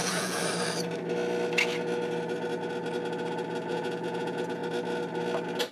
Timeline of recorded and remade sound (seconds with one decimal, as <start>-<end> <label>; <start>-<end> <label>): 0.0-0.4 remade; 0.4-3.7 recorded; 3.7-4.6 remade; 4.6-5.7 recorded